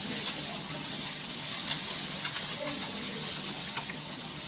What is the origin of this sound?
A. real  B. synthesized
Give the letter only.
B